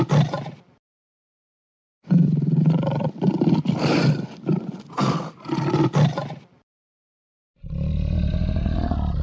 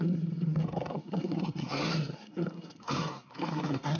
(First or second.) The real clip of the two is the first